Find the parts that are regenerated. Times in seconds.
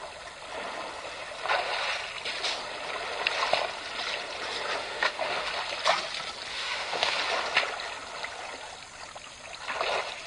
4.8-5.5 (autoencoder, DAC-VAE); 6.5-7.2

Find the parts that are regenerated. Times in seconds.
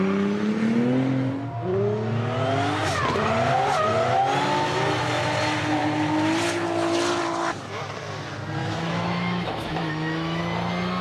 8.6-10.4 (autoencoder, DAC-VAE)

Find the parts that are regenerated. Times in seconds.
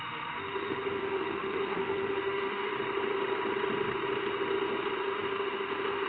0.0-2.7 (autoencoder, DAC-VAE); 5.0-6.1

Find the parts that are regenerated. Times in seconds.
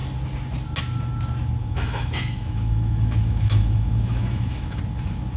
1.6-4.8 (autoencoder, DAC-VAE)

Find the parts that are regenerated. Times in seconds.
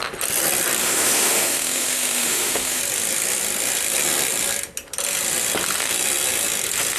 0.8-2.8 (autoencoder, DAC-VAE)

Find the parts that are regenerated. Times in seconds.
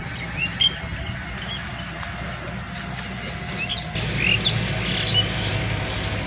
none